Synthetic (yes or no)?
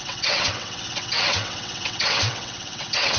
yes